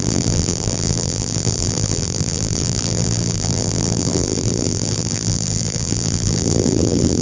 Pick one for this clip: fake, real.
fake